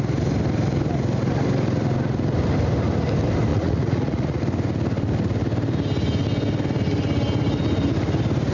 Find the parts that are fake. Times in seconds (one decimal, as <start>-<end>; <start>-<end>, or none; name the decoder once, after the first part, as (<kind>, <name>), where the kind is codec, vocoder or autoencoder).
3.5-4.4 (vocoder, Vocos)